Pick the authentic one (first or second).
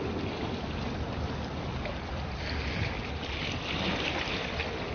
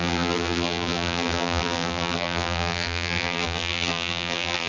first